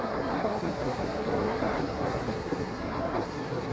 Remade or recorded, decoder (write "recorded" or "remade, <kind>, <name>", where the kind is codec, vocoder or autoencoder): remade, codec, SNAC